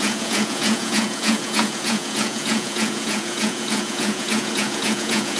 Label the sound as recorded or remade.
remade